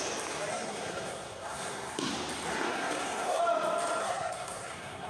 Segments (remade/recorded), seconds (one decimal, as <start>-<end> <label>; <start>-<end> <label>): 0.0-0.5 recorded; 0.5-2.1 remade; 2.1-2.5 recorded; 2.5-3.4 remade; 3.4-4.0 recorded; 4.0-5.1 remade